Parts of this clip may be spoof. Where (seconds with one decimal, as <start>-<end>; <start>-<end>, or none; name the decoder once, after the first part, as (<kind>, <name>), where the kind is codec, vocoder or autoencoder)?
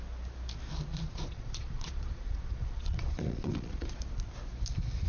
0.9-4.0 (vocoder, Vocos)